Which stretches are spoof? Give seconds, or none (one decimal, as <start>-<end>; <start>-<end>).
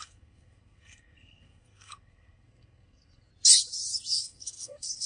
0.0-3.3; 4.2-5.1